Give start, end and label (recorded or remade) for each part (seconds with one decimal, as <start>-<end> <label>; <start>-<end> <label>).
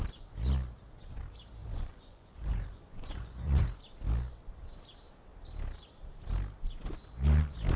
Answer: 0.0-1.6 recorded; 1.6-3.8 remade; 3.8-7.8 recorded